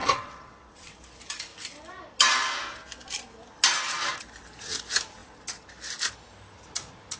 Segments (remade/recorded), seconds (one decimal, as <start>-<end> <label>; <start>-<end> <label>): 0.0-1.0 remade; 1.0-7.2 recorded